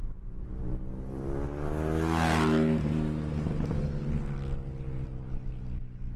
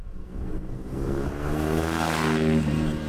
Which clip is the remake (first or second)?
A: second